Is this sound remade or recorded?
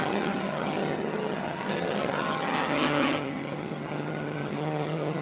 remade